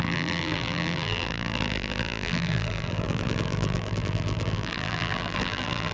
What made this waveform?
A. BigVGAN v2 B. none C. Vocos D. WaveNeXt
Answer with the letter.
A